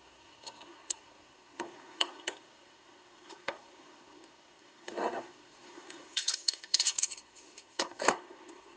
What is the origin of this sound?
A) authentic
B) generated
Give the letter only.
B